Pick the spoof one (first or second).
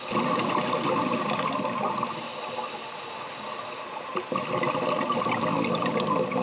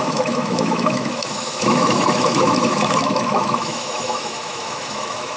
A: second